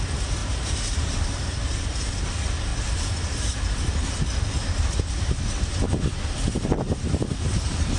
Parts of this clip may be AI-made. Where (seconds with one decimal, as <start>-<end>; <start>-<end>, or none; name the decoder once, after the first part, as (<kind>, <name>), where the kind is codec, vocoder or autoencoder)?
0.4-1.5 (vocoder, BigVGAN v2); 2.7-4.2